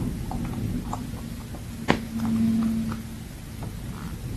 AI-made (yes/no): no